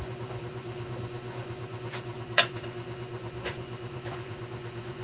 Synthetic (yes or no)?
yes